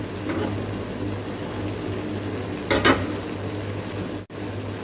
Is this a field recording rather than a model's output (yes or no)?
yes